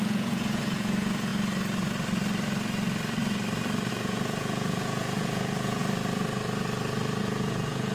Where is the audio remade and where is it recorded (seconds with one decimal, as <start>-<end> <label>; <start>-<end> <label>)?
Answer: 0.0-1.3 remade; 1.3-3.9 recorded; 3.9-5.8 remade; 5.8-7.2 recorded; 7.2-7.9 remade